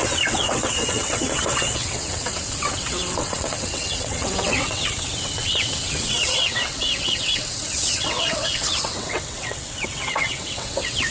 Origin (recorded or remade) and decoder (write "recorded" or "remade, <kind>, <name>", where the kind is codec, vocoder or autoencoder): remade, vocoder, WaveNeXt